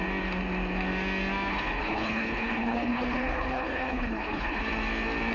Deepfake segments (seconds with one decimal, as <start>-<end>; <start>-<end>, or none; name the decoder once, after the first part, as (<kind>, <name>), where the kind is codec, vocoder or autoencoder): 1.5-4.6 (codec, HILCodec)

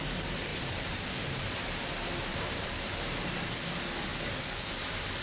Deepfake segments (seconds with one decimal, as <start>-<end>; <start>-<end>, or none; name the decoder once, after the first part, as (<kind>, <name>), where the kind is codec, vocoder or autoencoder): 0.5-1.5 (vocoder, BigVGAN v2); 2.3-3.5

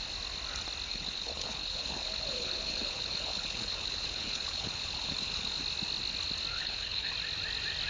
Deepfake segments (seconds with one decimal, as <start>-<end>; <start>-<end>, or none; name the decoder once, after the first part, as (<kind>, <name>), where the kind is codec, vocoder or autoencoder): 0.9-5.6 (codec, HILCodec); 6.5-7.1

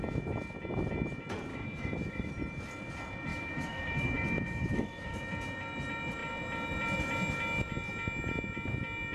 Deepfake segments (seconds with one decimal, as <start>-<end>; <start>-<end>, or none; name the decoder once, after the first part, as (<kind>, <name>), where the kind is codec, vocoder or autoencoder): 1.5-2.3 (autoencoder, DAC-VAE); 3.3-5.2